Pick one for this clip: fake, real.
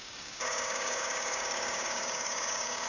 fake